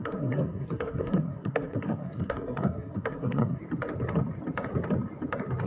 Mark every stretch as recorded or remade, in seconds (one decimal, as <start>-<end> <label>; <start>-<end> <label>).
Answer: 0.0-3.6 remade; 3.6-5.7 recorded